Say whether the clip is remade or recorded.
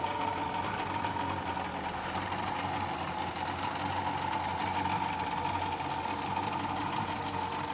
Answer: recorded